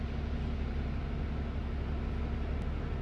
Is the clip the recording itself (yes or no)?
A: yes